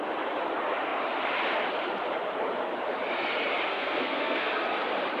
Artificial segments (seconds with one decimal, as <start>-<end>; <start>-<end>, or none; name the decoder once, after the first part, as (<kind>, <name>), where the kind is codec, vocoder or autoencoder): 3.7-4.5 (codec, SNAC)